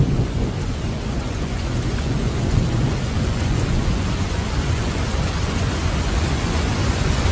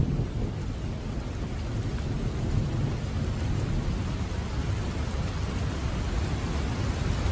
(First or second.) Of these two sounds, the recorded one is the second